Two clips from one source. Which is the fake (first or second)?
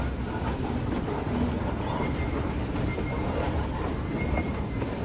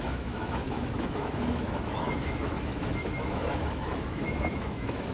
second